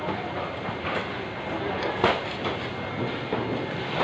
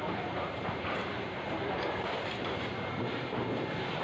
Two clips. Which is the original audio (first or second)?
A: first